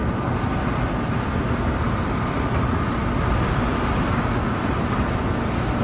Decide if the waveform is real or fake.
real